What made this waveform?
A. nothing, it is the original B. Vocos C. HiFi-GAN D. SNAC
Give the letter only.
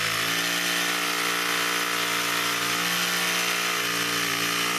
A